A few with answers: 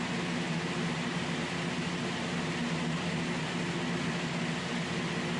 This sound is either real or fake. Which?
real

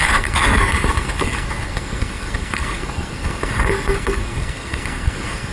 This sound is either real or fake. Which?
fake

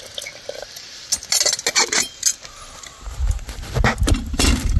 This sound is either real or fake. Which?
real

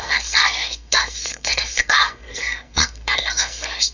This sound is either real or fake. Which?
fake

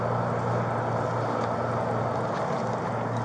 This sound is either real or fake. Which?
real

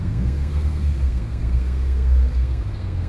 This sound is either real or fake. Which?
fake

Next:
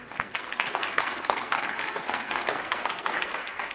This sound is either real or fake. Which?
fake